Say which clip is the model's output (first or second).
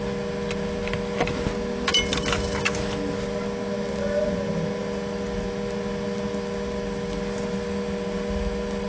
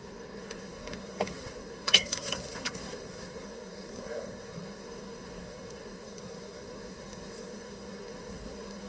second